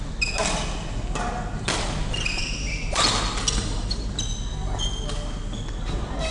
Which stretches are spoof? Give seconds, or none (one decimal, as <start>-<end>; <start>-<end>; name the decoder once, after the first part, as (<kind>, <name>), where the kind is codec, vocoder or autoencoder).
none